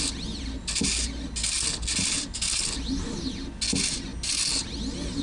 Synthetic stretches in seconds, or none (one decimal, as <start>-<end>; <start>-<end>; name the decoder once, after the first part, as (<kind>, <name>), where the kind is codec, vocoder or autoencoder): none